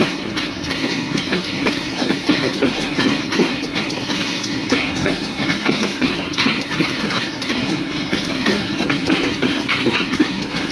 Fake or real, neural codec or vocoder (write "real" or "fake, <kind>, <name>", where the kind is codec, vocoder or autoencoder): fake, codec, SNAC